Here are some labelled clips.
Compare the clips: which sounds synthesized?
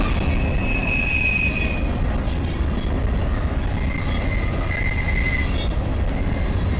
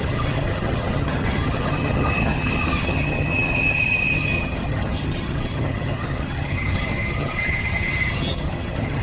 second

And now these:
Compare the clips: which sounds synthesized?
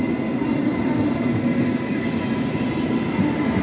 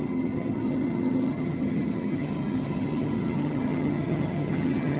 second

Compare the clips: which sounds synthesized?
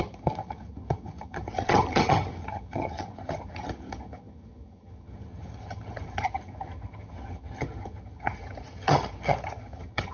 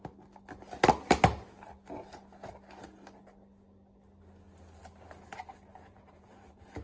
first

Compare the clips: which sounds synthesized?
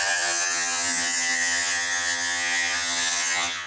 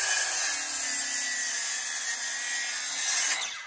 first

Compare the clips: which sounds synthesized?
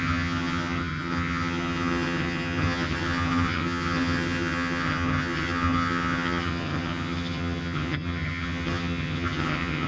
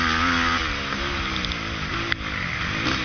first